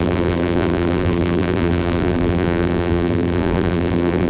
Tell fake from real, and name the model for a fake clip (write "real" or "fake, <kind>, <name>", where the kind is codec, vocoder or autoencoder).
fake, vocoder, BigVGAN v2